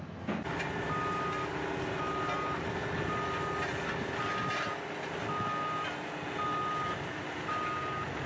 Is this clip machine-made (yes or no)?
no